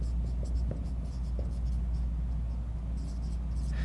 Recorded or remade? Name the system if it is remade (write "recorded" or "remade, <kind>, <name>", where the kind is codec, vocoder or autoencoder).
recorded